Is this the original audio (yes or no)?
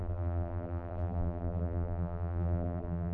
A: no